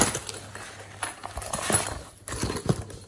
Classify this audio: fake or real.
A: real